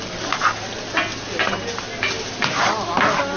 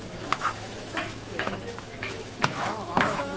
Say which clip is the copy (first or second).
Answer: second